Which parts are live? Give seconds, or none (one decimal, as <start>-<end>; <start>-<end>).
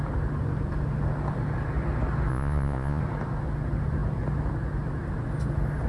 0.0-2.3; 3.0-5.9